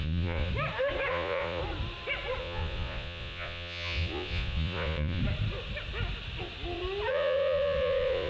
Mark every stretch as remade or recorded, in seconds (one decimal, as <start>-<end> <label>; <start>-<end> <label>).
0.0-0.5 remade; 0.5-1.1 recorded; 1.1-1.6 remade; 1.6-2.4 recorded; 2.4-5.2 remade; 5.2-7.1 recorded; 7.1-8.3 remade